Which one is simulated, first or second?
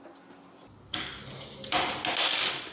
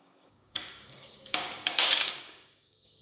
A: second